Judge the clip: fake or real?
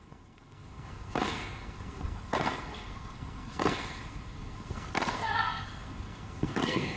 fake